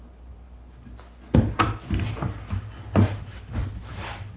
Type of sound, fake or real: real